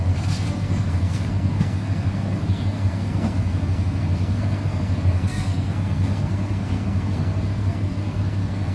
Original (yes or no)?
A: no